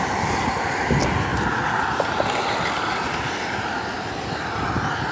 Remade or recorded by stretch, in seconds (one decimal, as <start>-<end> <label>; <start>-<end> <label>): 0.0-5.1 recorded